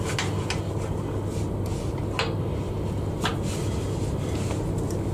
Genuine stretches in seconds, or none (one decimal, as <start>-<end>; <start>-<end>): 0.0-5.1